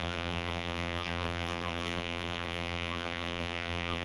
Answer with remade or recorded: remade